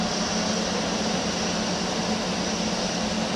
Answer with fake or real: real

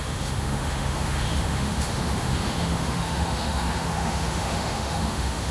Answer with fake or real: fake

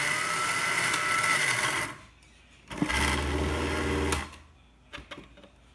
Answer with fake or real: real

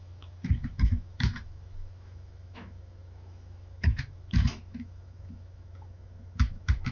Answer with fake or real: fake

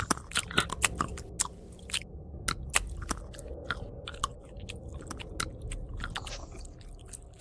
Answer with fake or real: real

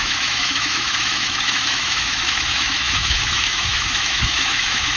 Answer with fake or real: fake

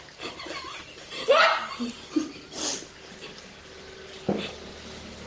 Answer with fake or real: real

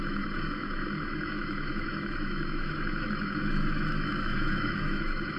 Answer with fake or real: fake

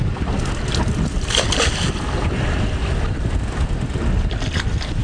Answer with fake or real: real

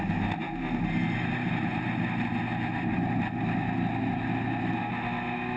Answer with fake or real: real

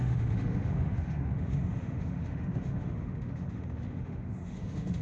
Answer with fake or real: fake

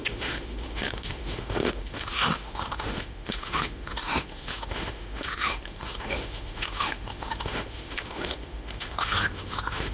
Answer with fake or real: fake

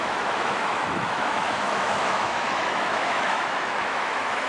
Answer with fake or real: fake